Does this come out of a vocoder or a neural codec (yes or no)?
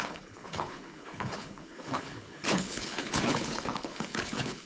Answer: yes